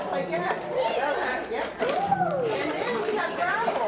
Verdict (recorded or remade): recorded